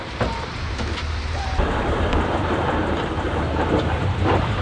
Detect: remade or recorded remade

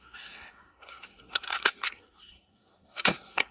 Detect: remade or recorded remade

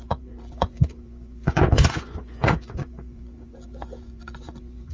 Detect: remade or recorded remade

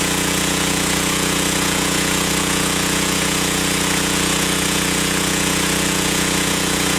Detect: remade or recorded remade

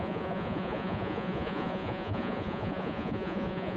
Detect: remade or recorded remade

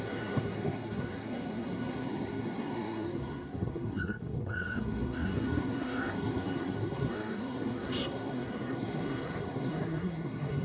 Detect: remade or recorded remade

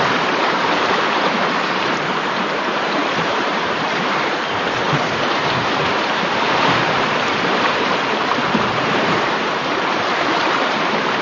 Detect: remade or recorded remade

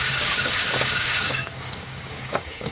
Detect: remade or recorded remade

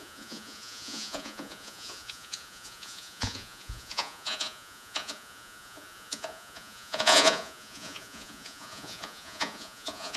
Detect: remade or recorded remade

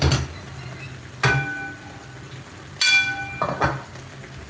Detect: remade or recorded recorded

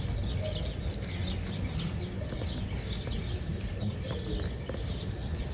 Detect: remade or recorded recorded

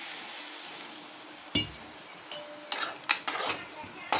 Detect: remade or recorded recorded